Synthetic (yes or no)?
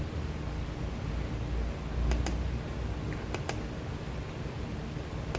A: no